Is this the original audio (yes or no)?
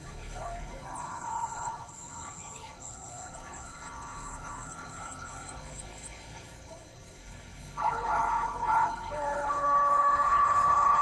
no